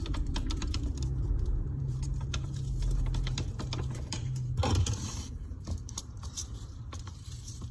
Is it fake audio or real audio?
fake